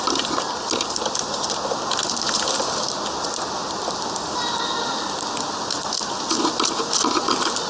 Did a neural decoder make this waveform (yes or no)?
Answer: no